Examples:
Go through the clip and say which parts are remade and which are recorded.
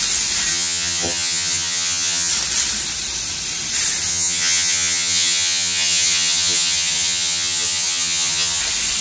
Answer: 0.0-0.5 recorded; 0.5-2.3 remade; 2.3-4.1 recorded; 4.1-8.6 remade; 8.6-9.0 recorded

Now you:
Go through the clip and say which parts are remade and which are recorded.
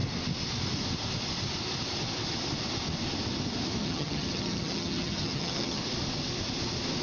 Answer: 0.0-3.8 recorded; 3.8-5.8 remade; 5.8-7.0 recorded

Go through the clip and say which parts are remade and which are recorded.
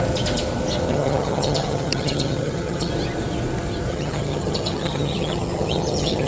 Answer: 0.0-0.9 recorded; 0.9-2.9 remade; 2.9-3.9 recorded; 3.9-6.3 remade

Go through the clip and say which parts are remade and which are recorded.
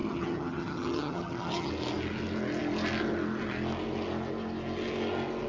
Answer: 0.0-1.7 remade; 1.7-5.5 recorded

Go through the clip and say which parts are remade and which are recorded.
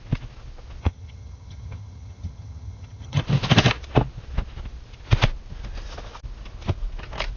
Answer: 0.0-0.8 recorded; 0.8-3.2 remade; 3.2-7.4 recorded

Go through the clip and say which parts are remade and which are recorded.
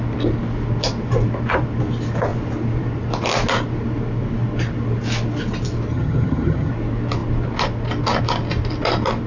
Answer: 0.0-5.9 recorded; 5.9-6.7 remade; 6.7-9.3 recorded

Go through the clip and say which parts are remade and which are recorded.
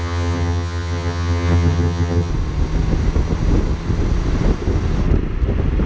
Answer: 0.0-2.3 remade; 2.3-5.9 recorded